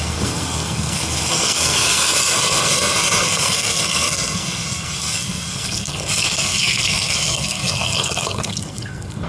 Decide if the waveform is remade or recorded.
remade